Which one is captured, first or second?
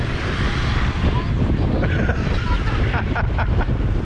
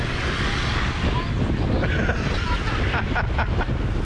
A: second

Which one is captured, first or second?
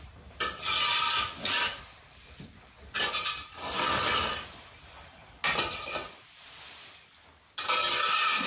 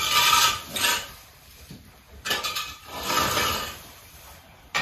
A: first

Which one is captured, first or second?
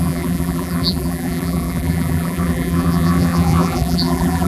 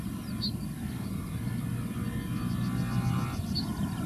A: second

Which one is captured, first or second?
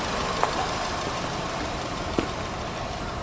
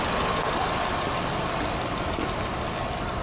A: second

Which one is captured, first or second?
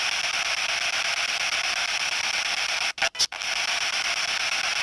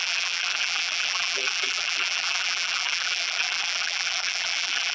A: first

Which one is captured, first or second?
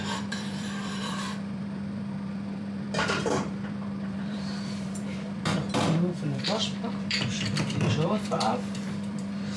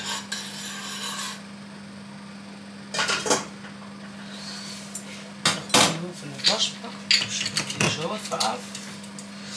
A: second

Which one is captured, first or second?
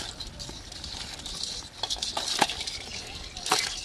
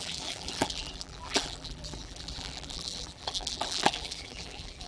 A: first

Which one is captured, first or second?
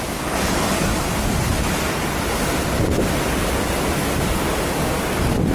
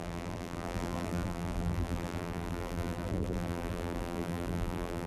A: first